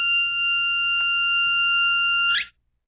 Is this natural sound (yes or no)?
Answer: yes